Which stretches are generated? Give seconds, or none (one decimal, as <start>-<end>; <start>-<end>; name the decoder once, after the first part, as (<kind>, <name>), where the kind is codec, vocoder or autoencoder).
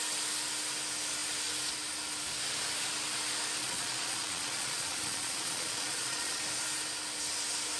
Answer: 3.6-6.4 (vocoder, Vocos)